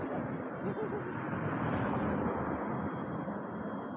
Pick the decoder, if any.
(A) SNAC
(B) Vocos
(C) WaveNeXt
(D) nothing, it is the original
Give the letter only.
D